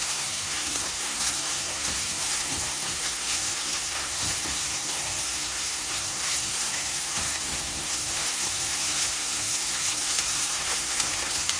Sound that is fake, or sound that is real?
fake